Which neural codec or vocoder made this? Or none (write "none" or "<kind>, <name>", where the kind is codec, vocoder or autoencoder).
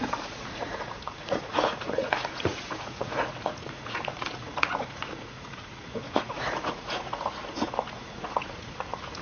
vocoder, Vocos